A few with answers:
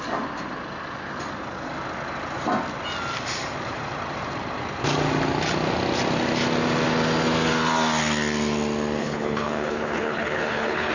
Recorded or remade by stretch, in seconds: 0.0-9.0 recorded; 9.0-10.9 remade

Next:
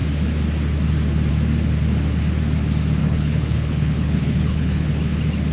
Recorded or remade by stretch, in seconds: 0.0-3.0 recorded; 3.0-4.9 remade; 4.9-5.5 recorded